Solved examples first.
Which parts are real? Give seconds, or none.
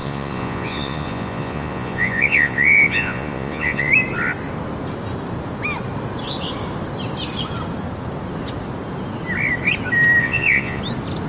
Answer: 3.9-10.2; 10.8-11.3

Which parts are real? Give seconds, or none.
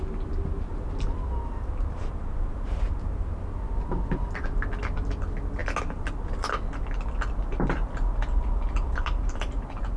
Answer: 0.0-10.0